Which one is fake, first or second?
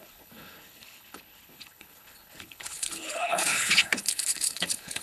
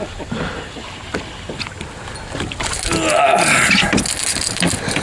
first